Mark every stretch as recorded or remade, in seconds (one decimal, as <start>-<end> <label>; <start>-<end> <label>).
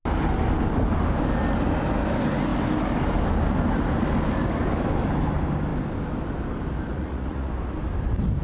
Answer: 0.0-6.9 recorded; 6.9-7.5 remade; 7.5-8.4 recorded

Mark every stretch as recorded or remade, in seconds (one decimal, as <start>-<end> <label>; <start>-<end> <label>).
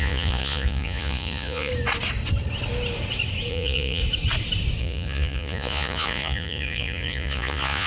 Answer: 0.0-1.7 remade; 1.7-3.5 recorded; 3.5-4.0 remade; 4.0-4.8 recorded; 4.8-7.9 remade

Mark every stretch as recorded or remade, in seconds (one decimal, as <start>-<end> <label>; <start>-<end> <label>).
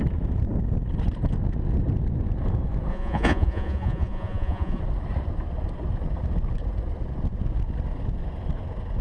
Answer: 0.0-2.9 recorded; 2.9-4.8 remade; 4.8-9.0 recorded